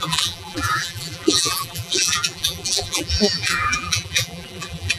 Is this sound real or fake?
fake